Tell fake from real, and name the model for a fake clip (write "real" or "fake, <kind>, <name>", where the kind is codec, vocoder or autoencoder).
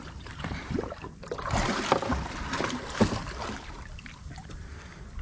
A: real